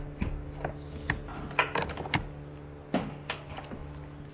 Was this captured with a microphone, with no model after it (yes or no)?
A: yes